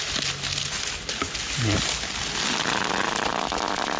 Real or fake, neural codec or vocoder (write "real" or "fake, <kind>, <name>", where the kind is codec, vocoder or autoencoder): real